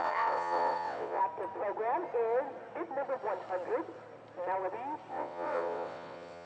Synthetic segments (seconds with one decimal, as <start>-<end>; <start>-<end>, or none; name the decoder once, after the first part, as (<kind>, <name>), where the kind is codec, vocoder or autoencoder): 0.0-1.2 (vocoder, WaveNeXt); 5.1-6.5